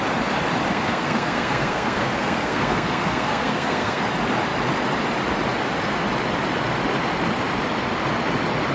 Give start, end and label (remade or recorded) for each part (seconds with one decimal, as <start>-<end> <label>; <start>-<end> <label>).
0.0-0.7 recorded; 0.7-4.0 remade; 4.0-8.7 recorded